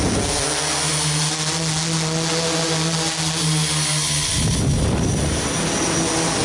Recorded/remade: recorded